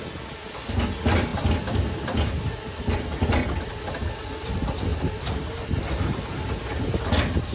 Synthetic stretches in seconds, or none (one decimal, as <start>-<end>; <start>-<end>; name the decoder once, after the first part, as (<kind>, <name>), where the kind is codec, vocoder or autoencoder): none